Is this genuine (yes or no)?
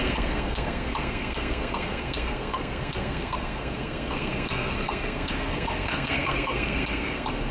no